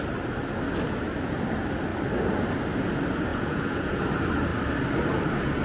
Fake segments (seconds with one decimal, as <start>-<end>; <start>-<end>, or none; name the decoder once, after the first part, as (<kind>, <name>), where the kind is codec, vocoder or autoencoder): 3.3-4.0 (vocoder, Vocos)

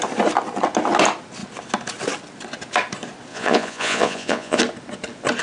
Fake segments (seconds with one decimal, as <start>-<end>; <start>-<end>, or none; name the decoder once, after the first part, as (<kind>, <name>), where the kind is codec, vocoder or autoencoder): 3.3-4.6 (vocoder, Vocos)

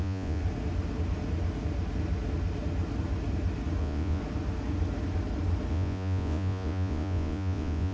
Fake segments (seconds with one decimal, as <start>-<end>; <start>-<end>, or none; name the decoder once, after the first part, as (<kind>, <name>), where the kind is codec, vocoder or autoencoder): 0.0-0.4 (vocoder, Vocos); 3.8-4.2; 5.7-7.9

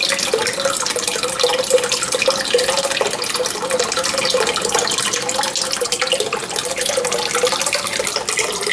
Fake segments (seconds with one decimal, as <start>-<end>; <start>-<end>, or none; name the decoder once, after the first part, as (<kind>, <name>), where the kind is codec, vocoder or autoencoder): none

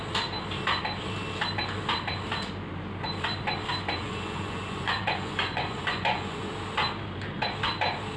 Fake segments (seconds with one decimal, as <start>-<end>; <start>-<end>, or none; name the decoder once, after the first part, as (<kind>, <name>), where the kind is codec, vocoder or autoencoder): 3.9-6.5 (vocoder, Vocos)

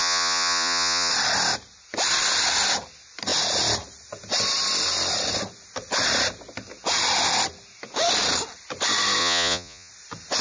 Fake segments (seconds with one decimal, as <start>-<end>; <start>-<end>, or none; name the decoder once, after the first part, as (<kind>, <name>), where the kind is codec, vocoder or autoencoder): 0.0-1.1 (vocoder, Vocos); 9.2-9.9